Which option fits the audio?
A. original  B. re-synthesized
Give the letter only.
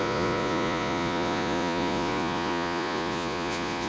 B